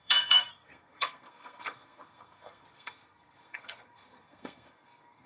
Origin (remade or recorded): remade